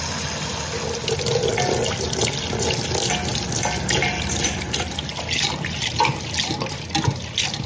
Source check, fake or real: real